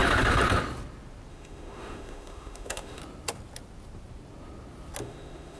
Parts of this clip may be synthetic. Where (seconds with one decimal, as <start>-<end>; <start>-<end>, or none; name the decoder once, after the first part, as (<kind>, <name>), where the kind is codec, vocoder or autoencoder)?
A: 1.3-3.0 (autoencoder, DAC-VAE); 5.0-5.6